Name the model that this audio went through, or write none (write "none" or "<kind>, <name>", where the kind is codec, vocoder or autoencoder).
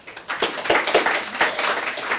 none